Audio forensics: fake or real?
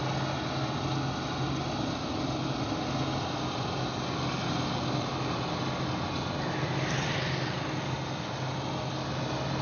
real